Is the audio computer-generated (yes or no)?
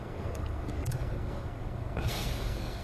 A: yes